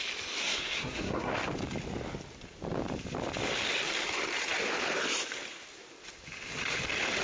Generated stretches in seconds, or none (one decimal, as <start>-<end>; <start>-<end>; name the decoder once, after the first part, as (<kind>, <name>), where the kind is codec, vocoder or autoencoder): 0.4-1.3 (codec, SNAC)